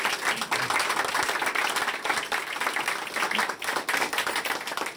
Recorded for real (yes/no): yes